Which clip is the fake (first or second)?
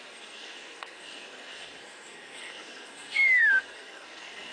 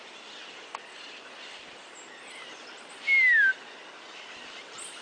first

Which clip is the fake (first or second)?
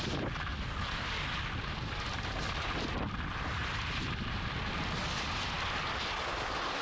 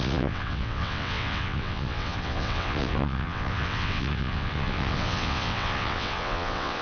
second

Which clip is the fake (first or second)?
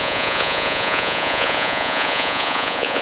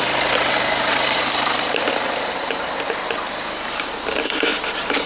first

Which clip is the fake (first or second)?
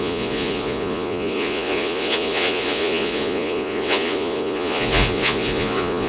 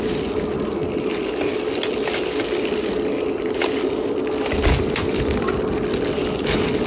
first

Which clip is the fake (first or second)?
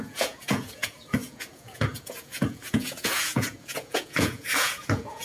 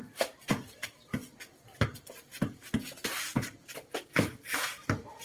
first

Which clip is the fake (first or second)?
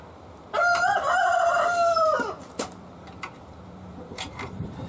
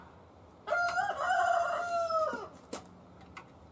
first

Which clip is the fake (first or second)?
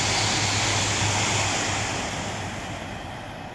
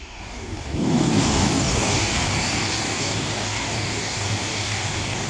second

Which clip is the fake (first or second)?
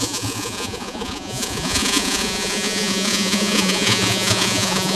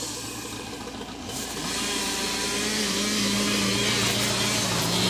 first